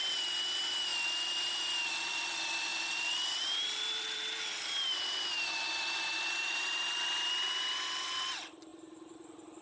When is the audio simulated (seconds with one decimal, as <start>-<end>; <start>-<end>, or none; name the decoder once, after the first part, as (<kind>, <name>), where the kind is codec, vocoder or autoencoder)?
0.0-0.9 (vocoder, BigVGAN v2); 1.5-4.5; 6.4-9.6